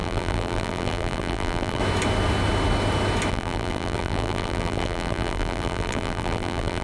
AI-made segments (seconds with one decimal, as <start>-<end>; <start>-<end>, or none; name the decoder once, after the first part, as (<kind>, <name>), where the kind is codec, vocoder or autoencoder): 0.0-1.8 (vocoder, BigVGAN v2); 3.3-6.8